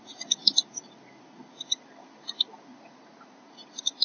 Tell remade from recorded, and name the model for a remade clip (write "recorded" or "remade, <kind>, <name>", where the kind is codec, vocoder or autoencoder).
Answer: recorded